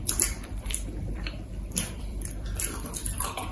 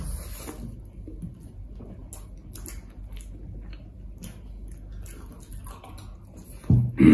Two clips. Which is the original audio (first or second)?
second